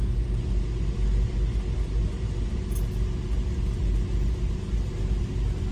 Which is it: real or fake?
real